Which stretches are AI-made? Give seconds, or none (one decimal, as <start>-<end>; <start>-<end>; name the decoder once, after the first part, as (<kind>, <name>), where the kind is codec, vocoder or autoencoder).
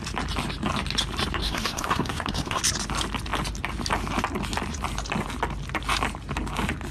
1.4-2.6 (codec, SNAC)